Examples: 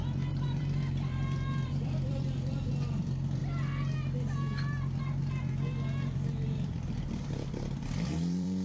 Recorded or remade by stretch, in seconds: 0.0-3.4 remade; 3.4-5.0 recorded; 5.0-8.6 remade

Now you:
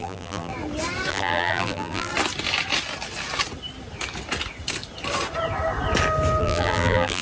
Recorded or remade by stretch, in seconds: 0.0-0.5 remade; 0.5-1.1 recorded; 1.1-2.1 remade; 2.1-6.4 recorded; 6.4-7.2 remade

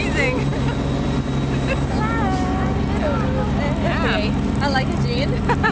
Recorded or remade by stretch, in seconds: 0.0-5.7 recorded

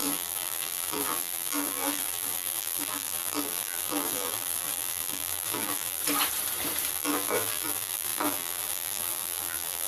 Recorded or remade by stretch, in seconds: 0.0-6.0 remade; 6.0-6.9 recorded; 6.9-9.9 remade

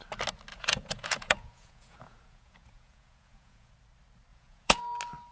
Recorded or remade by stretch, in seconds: 0.0-0.5 recorded; 0.5-3.7 remade; 3.7-4.3 recorded; 4.3-4.8 remade; 4.8-5.3 recorded

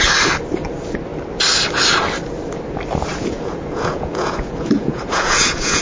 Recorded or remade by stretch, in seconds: 0.0-3.1 recorded; 3.1-5.8 remade